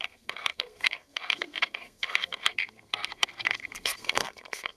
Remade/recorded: remade